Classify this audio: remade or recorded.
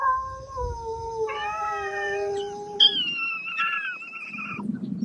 recorded